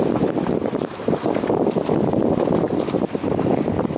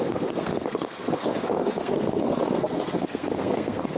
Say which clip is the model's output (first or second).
second